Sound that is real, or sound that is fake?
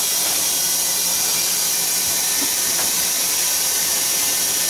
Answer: fake